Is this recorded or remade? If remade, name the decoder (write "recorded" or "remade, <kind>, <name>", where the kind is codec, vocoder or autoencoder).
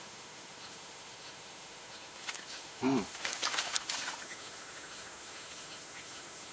remade, autoencoder, DAC-VAE